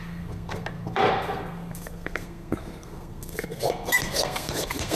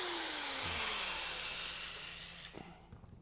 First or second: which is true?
second